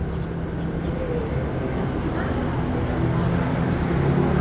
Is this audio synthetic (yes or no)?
no